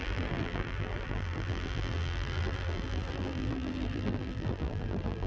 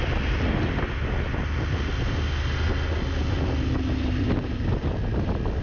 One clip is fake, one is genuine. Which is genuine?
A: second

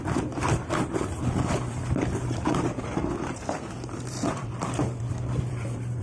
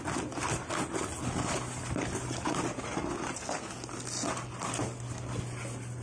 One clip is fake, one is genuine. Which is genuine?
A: second